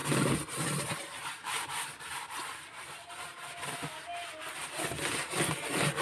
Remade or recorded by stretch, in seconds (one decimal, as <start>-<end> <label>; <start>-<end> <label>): 0.0-3.1 remade; 3.1-6.0 recorded